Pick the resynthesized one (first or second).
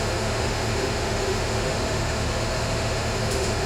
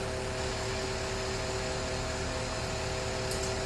first